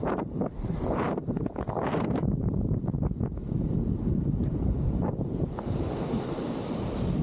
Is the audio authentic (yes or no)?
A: no